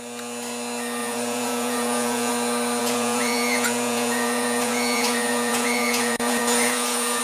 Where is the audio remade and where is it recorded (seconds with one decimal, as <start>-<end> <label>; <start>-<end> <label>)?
0.0-1.0 recorded; 1.0-2.3 remade; 2.3-2.8 recorded; 2.8-7.2 remade